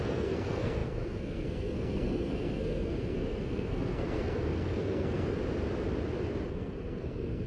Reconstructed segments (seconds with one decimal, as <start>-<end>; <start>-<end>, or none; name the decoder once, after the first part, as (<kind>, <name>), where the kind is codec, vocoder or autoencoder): 0.0-5.4 (codec, SNAC); 6.5-7.5